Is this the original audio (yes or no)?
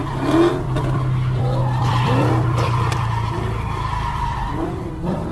no